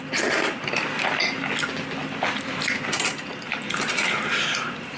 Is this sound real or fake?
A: real